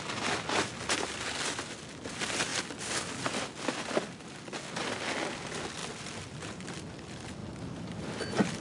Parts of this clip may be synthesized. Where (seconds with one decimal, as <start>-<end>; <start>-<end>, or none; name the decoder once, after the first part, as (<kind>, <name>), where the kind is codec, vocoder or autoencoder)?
none